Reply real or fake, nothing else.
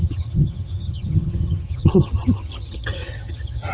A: fake